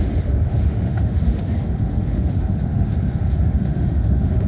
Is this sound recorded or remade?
remade